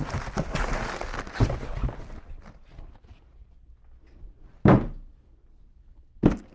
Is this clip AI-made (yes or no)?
no